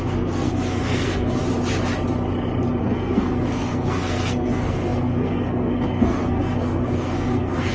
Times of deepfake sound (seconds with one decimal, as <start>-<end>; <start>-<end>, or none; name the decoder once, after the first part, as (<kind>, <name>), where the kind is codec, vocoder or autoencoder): 0.0-1.4 (codec, SNAC); 2.8-7.7